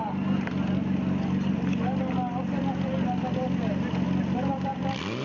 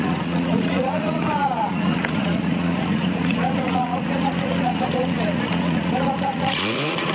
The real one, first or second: first